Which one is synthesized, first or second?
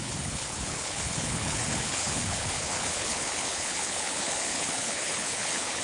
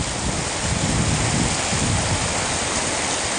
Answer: first